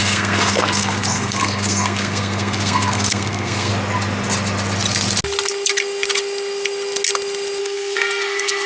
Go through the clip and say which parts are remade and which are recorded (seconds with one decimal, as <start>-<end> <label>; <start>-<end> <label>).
0.0-3.7 remade; 3.7-7.6 recorded; 7.6-8.7 remade